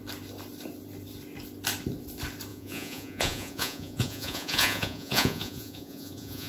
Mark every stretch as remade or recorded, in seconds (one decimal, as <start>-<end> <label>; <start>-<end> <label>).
0.0-2.5 recorded; 2.5-6.5 remade